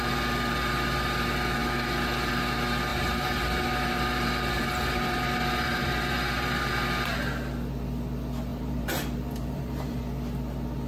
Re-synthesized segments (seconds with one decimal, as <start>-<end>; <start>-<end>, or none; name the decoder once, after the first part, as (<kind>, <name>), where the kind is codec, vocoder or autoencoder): 2.9-6.7 (vocoder, BigVGAN v2); 8.5-10.0